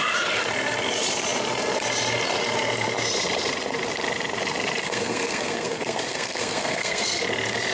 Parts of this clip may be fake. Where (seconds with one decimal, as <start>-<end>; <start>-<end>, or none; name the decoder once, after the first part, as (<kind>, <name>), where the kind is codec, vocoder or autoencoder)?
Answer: 4.8-7.2 (codec, SNAC)